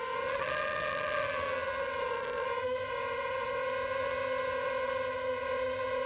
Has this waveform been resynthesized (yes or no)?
yes